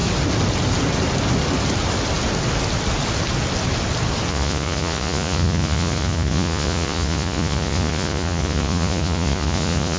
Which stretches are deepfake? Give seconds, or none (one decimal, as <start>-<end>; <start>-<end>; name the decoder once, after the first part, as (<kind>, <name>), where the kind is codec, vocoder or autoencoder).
4.3-10.0 (vocoder, Vocos)